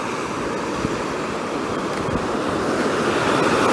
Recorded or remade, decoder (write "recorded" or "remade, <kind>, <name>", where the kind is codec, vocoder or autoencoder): recorded